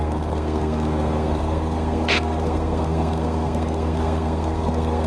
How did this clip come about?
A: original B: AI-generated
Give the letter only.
B